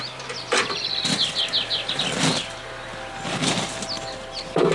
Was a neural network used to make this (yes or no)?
no